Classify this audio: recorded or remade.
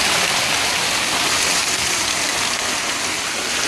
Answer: recorded